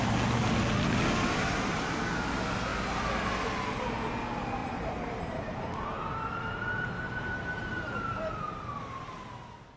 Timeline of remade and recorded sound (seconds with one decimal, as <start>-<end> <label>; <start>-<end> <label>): 0.0-4.6 recorded; 4.6-8.8 remade; 8.8-9.8 recorded